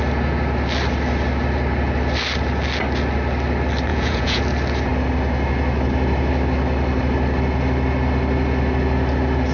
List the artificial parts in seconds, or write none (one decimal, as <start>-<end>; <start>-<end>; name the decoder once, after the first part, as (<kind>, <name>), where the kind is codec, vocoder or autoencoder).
3.9-4.4 (vocoder, Vocos)